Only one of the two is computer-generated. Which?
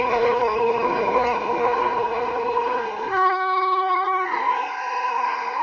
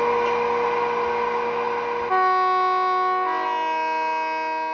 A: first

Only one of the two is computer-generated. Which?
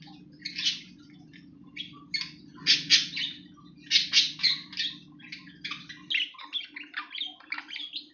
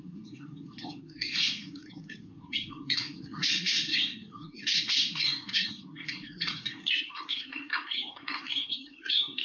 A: second